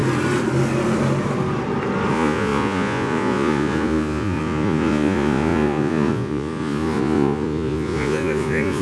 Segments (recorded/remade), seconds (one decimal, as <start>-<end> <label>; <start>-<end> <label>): 0.0-2.1 recorded; 2.1-8.8 remade